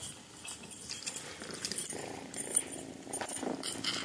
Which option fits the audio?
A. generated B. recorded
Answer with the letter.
A